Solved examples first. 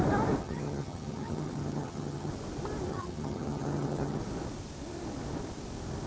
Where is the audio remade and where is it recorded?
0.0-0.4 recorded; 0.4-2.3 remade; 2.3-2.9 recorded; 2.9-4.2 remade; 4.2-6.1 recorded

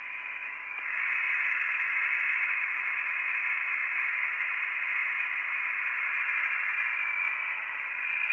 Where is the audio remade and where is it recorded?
0.0-8.3 recorded

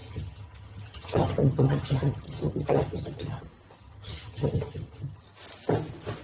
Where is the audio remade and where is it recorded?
0.0-3.4 remade; 3.4-3.8 recorded; 3.8-5.2 remade; 5.2-6.2 recorded

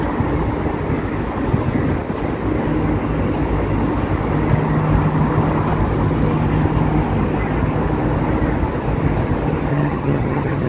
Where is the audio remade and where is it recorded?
0.0-9.7 recorded; 9.7-10.7 remade

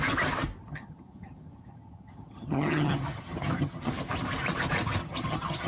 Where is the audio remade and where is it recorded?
0.0-0.7 recorded; 0.7-3.9 remade; 3.9-5.0 recorded; 5.0-5.7 remade

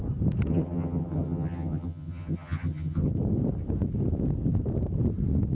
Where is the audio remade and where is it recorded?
0.0-0.5 recorded; 0.5-3.1 remade; 3.1-5.5 recorded

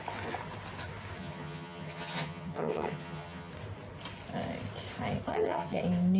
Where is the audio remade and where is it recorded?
0.0-1.2 recorded; 1.2-3.5 remade; 3.5-5.3 recorded; 5.3-5.8 remade; 5.8-6.2 recorded

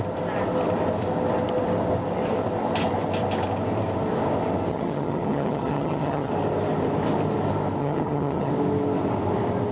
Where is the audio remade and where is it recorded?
0.0-4.7 recorded; 4.7-6.3 remade; 6.3-7.8 recorded; 7.8-8.5 remade; 8.5-9.7 recorded